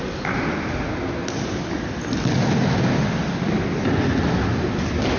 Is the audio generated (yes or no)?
no